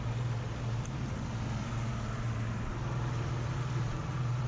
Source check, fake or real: real